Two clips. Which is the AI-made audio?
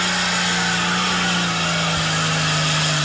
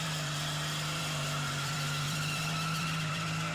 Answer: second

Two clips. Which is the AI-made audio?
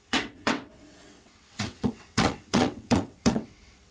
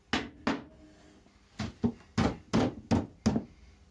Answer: first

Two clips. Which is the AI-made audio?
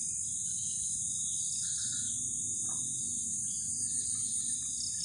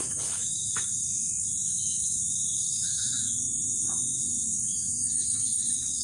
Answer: second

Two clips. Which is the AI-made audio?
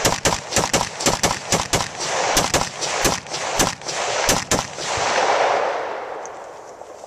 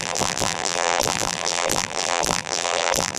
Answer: second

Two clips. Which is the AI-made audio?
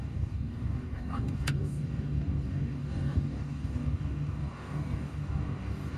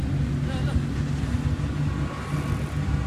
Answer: first